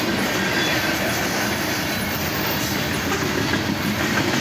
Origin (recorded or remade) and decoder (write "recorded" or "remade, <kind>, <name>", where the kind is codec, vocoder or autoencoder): recorded